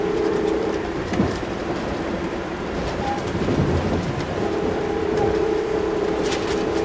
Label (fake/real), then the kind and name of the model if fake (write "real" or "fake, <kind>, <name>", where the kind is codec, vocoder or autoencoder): fake, vocoder, BigVGAN v2